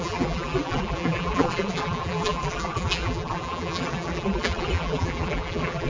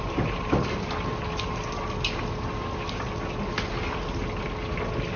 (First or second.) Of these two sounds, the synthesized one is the first